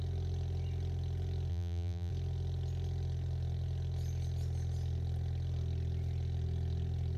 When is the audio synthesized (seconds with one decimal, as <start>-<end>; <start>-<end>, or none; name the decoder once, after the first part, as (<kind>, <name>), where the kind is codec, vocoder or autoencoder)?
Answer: 1.5-2.1 (vocoder, BigVGAN v2)